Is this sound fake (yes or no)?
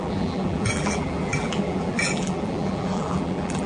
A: yes